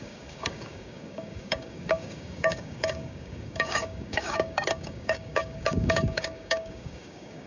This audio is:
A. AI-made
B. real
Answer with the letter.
A